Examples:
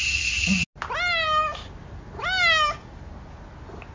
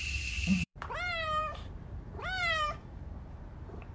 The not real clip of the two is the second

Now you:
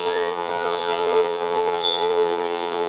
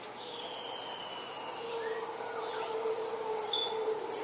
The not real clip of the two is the first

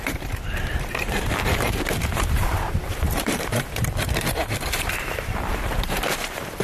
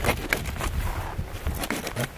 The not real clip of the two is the first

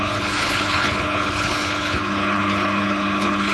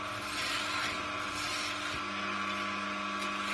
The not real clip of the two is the first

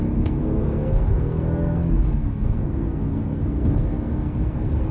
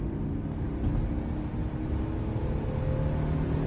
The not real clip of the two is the first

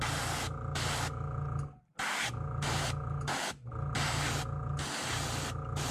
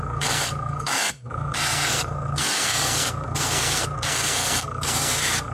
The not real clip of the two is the second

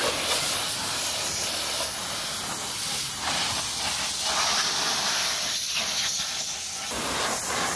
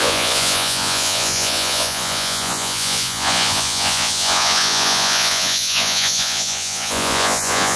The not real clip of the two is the second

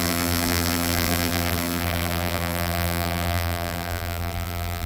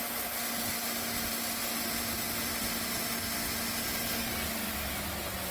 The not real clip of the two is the first